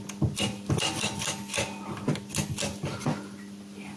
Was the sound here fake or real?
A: real